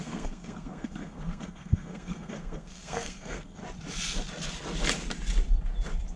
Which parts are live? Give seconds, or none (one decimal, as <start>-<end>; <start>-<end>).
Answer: 3.6-6.2